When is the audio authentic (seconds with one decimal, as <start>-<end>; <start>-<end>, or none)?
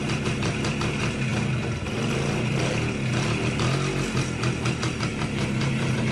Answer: 1.3-5.0